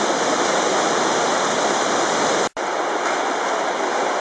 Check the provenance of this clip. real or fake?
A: real